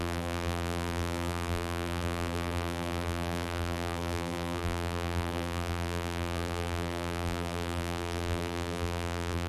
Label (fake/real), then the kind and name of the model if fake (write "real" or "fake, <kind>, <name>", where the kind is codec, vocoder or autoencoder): fake, vocoder, BigVGAN v2